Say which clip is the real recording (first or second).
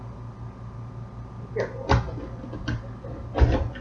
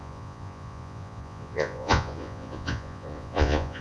first